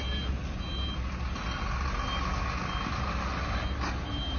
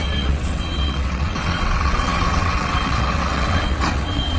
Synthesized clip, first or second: second